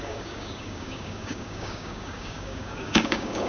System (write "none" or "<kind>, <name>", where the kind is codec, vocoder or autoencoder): codec, DAC